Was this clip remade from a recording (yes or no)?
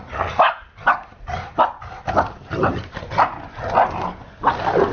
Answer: no